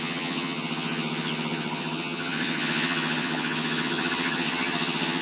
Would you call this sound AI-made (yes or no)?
yes